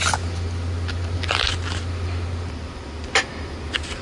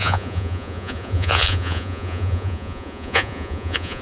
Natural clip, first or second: first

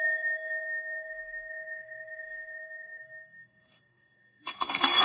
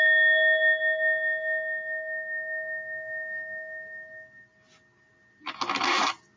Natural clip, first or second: second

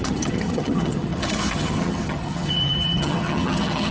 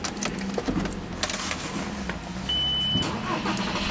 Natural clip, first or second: second